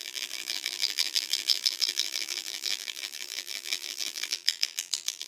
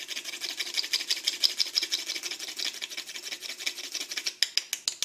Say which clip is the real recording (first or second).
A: second